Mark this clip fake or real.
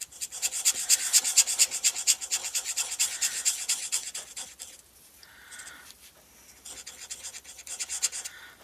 real